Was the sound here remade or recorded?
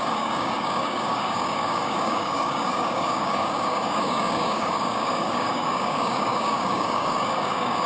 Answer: remade